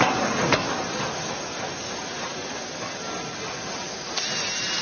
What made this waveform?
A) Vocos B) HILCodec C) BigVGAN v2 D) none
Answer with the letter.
D